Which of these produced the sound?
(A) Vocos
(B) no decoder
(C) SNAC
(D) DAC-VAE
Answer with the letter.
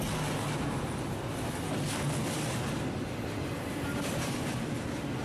B